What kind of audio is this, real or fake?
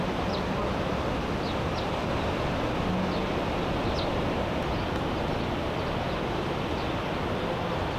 real